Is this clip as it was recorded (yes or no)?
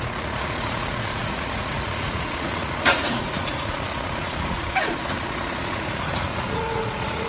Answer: no